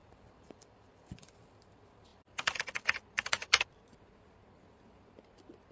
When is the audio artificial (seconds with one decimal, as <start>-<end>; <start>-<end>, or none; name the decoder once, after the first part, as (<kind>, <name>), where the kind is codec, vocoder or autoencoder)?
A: 0.0-1.3 (vocoder, BigVGAN v2); 2.1-3.7